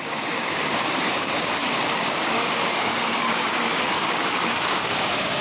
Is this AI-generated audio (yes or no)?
yes